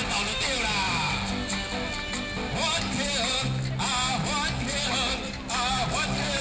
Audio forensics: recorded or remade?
recorded